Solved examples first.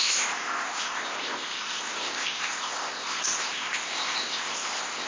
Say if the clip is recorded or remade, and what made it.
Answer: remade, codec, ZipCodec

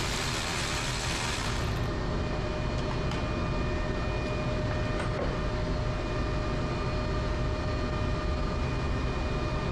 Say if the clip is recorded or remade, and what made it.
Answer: recorded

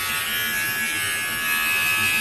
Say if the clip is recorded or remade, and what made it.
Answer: recorded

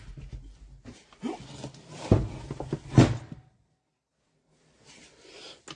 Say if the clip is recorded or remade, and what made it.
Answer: recorded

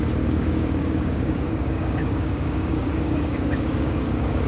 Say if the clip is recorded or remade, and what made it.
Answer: remade, codec, DAC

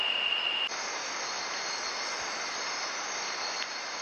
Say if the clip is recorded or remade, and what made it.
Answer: recorded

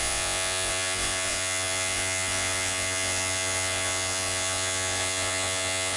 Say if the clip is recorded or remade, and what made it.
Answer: remade, vocoder, Vocos